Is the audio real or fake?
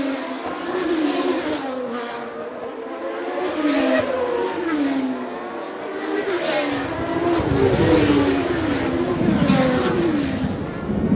real